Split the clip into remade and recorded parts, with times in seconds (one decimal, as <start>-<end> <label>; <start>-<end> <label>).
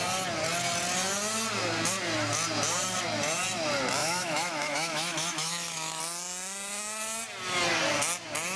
0.0-4.0 recorded; 4.0-6.0 remade; 6.0-8.6 recorded